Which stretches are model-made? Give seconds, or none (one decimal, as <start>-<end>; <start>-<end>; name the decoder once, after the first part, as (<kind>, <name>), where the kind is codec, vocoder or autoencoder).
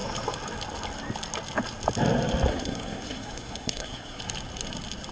2.5-4.2 (codec, SNAC)